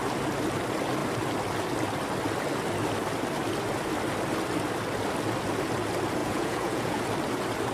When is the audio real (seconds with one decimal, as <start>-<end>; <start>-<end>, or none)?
0.0-6.2; 7.0-7.7

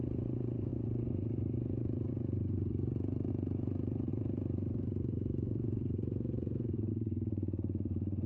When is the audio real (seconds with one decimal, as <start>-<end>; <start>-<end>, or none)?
none

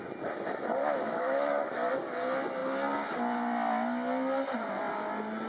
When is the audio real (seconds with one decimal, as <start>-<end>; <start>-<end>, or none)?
0.0-0.8; 1.9-5.5

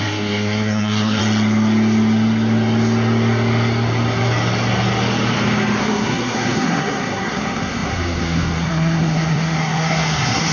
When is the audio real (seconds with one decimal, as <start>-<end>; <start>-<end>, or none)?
1.2-5.8

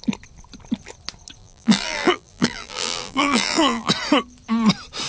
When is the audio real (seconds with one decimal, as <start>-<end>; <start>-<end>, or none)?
0.0-1.4; 3.9-5.1